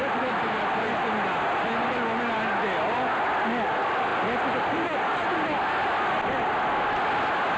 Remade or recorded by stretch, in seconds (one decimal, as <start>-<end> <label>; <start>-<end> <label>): 0.0-7.6 recorded